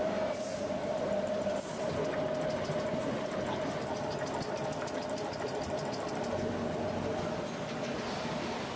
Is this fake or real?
real